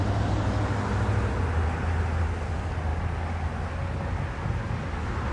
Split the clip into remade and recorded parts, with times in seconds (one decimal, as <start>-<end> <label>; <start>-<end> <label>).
0.0-5.3 recorded